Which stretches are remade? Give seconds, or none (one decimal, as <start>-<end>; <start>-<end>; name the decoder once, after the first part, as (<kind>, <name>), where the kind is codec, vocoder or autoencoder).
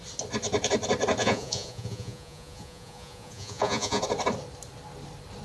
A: 1.2-4.0 (vocoder, Vocos)